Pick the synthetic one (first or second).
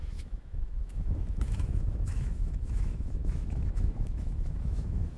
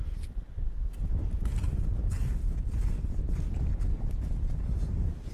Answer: first